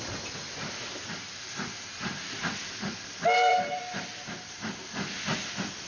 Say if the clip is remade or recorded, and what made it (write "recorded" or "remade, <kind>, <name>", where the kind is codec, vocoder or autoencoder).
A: recorded